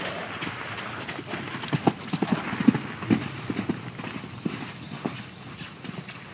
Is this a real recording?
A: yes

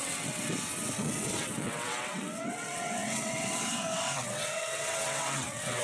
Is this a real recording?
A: no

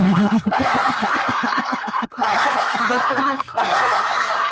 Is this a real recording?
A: no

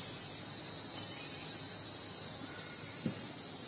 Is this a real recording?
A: yes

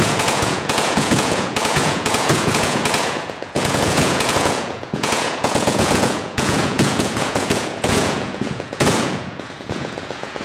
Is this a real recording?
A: no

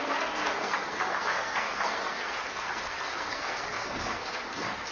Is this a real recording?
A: no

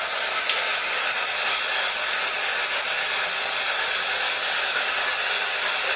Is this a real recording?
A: yes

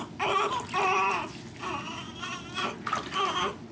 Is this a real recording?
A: yes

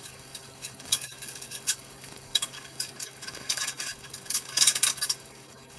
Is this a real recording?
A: no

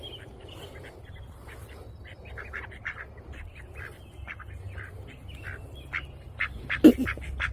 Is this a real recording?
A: yes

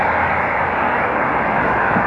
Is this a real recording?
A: no